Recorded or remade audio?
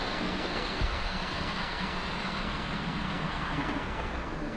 remade